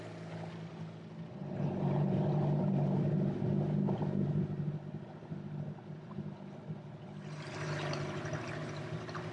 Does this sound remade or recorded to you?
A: recorded